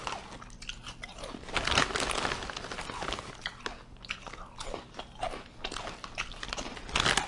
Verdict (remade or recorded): recorded